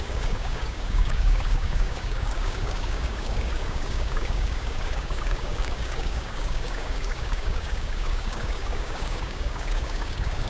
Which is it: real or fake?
fake